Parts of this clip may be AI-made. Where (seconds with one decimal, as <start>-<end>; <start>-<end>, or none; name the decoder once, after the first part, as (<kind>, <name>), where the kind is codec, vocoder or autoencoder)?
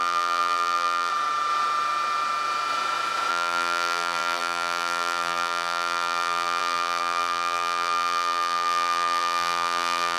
0.0-1.1 (vocoder, BigVGAN v2); 3.3-10.2